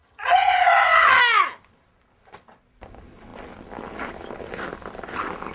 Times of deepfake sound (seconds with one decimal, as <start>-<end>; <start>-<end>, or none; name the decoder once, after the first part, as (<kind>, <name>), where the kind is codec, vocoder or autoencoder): 0.0-1.2 (vocoder, HiFi-GAN)